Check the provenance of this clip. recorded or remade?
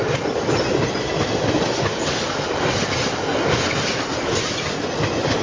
recorded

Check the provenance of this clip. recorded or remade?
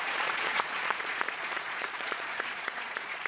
remade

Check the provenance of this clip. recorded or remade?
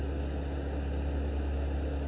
recorded